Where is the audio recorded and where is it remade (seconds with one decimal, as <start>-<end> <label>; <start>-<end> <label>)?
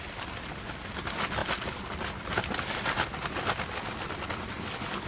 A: 0.0-5.1 recorded